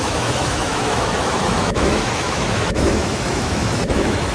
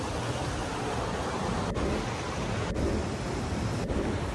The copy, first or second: first